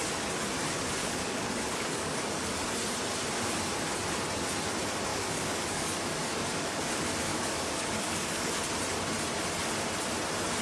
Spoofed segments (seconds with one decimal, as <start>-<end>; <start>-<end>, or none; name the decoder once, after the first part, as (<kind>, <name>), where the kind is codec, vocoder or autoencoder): 1.0-2.6 (codec, DAC); 5.1-6.8; 7.3-8.5